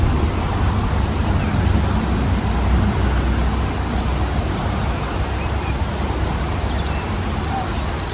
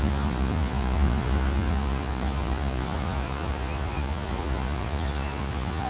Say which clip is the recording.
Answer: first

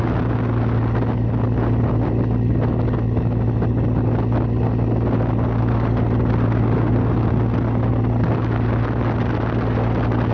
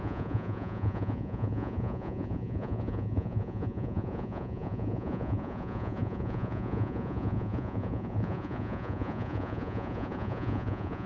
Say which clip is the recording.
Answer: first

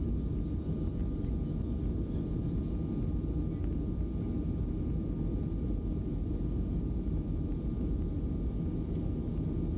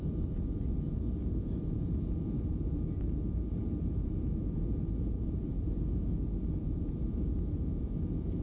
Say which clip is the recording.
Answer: first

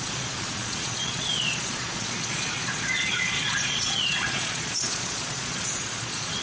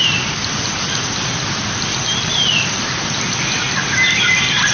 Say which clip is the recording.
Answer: second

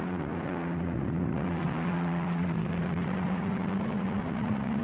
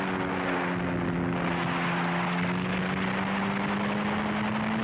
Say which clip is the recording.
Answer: second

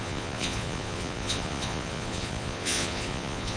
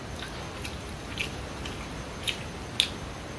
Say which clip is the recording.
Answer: second